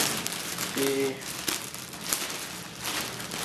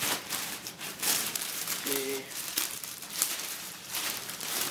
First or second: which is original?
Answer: first